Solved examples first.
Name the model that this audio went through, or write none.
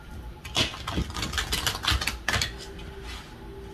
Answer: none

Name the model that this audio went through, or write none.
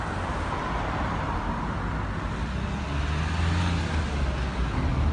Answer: none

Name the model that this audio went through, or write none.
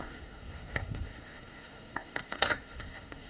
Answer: codec, SNAC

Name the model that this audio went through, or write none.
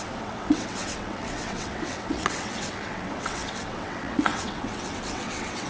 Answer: vocoder, WaveNeXt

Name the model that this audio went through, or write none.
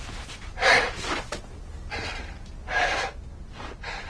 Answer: none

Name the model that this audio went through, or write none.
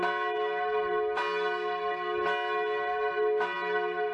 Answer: none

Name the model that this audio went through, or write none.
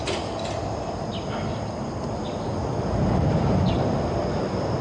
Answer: none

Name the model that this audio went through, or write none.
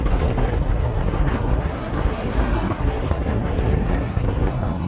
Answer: codec, SNAC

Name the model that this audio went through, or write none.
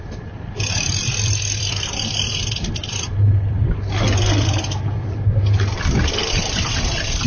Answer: vocoder, BigVGAN v2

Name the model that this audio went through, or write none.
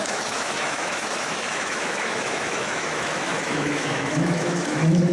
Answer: autoencoder, DAC-VAE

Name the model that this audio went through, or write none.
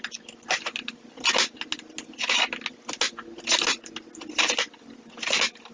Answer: none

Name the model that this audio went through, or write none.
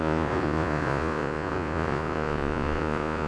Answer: vocoder, Vocos